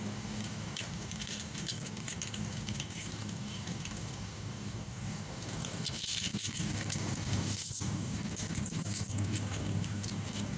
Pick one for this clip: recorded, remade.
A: remade